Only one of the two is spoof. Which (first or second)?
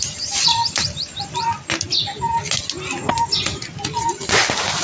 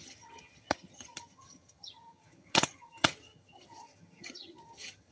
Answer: second